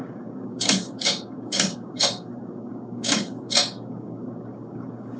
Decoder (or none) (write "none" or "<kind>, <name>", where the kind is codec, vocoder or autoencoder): codec, DAC